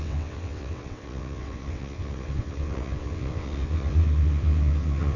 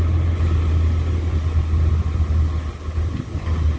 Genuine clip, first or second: second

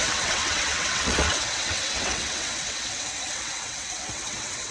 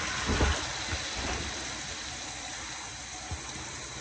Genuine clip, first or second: second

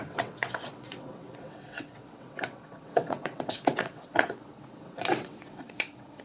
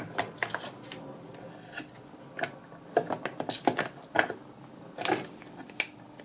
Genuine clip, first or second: second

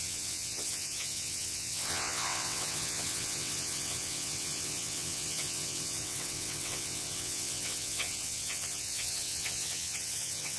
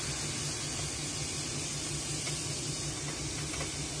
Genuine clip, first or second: second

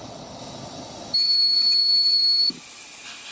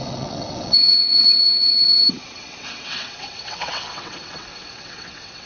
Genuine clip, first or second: first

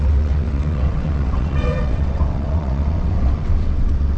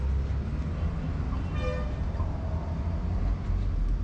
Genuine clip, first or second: second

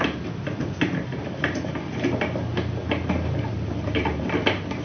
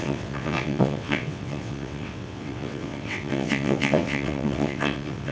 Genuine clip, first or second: first